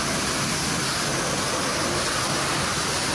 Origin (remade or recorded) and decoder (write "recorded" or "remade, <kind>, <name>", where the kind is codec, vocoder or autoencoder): recorded